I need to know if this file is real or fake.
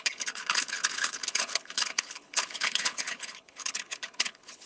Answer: fake